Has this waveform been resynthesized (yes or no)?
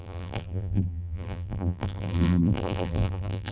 yes